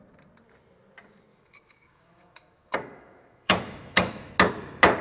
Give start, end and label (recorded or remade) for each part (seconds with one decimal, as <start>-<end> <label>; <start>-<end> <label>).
0.0-1.3 recorded; 1.3-4.3 remade; 4.3-5.0 recorded